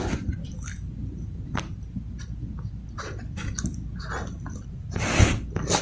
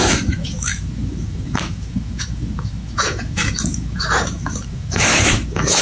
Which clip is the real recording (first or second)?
first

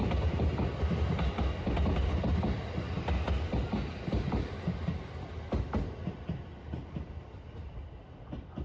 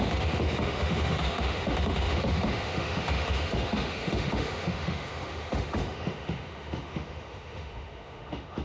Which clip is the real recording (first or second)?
first